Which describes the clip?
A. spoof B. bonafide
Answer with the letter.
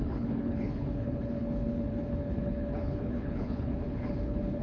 A